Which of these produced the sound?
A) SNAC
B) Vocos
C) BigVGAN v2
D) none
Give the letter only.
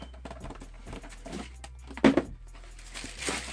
D